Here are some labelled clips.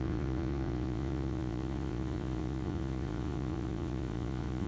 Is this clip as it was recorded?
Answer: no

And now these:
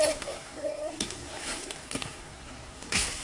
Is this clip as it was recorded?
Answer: no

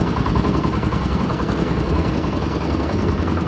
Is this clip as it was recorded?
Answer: no